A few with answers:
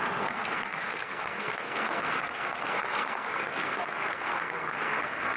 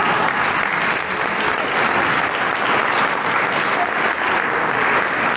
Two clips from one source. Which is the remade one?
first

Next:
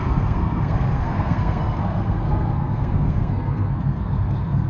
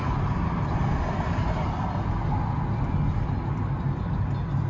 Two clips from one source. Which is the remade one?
first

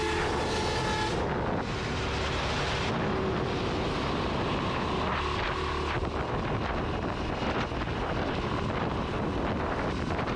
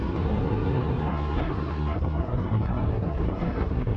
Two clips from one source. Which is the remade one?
second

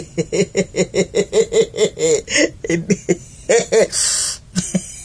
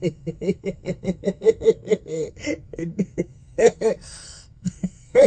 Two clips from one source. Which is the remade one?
second